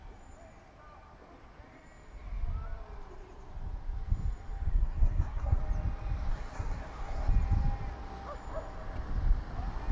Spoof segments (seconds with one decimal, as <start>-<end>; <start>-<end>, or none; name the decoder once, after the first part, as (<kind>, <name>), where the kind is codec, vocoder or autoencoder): 4.7-5.6 (codec, SNAC); 6.3-7.3